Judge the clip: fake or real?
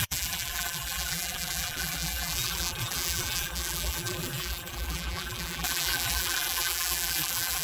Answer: fake